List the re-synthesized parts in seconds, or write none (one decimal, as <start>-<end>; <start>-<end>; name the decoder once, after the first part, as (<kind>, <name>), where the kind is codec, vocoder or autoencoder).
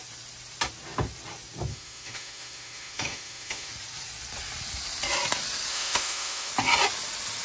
1.7-3.7 (autoencoder, DAC-VAE); 5.7-6.5